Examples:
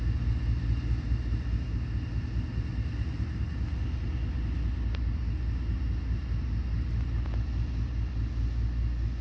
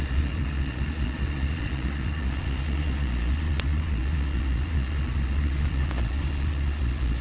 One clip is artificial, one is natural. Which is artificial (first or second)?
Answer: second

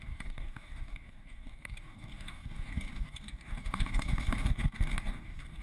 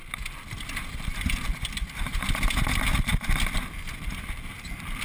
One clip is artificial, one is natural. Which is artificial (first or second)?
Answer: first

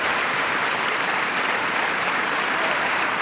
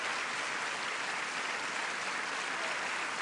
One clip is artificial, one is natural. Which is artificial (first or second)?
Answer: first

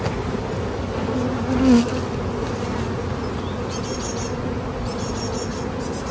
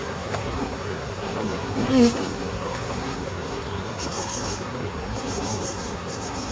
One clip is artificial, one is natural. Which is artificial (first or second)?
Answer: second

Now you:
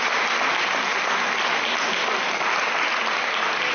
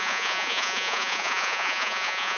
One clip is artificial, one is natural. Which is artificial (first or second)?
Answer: second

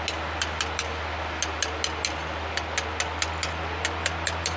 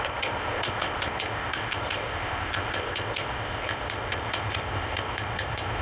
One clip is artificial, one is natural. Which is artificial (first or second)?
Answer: second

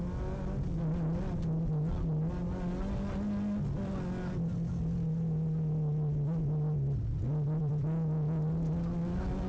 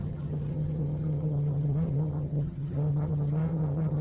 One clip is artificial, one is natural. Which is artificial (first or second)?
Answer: second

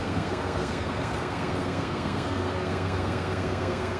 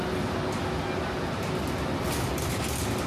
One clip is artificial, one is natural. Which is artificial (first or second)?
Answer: first